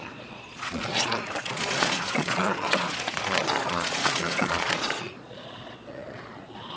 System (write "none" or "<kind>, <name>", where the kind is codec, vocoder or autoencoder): vocoder, Vocos